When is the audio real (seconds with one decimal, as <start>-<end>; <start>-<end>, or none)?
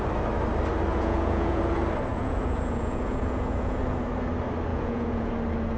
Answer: 0.0-0.9; 1.6-2.1; 3.8-4.7; 5.3-5.8